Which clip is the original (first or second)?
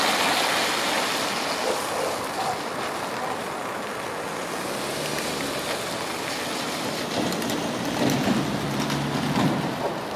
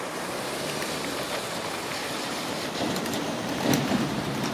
first